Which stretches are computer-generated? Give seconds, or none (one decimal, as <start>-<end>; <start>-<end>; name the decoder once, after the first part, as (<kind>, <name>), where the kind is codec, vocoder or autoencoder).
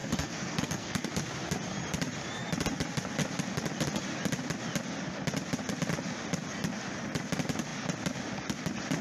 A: 0.0-1.1 (codec, SNAC)